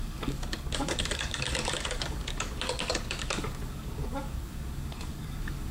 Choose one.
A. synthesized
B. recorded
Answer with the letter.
A